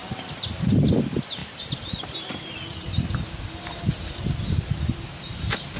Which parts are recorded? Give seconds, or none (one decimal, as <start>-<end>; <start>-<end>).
0.7-1.4; 4.9-5.8